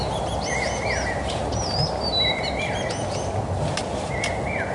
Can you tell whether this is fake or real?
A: real